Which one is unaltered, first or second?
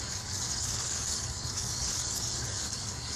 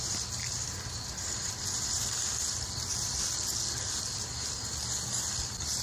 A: second